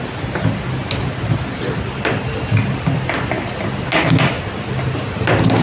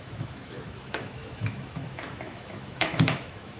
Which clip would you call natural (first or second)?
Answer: first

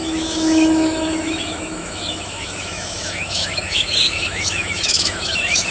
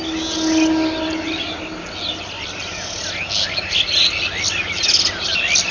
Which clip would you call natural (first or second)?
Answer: second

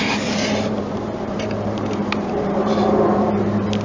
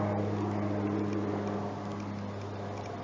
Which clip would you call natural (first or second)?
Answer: second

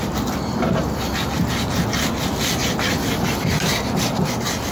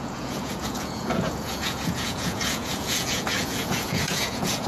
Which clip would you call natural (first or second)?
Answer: first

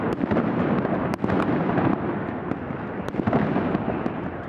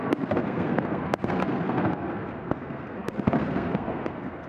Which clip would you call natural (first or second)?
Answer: first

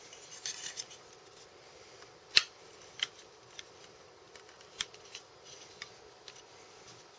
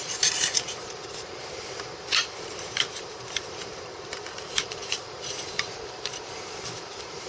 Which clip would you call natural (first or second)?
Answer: first